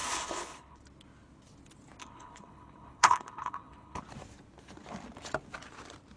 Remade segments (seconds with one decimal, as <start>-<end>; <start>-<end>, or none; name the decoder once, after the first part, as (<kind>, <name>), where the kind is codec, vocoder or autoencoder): 0.0-0.8 (codec, HILCodec); 2.0-4.0